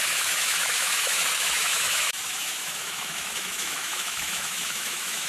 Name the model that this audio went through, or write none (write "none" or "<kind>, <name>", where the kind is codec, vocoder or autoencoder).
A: autoencoder, DAC-VAE